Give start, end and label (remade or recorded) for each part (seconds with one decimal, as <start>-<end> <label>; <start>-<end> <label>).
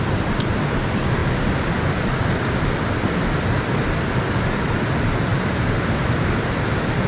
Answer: 0.0-7.1 recorded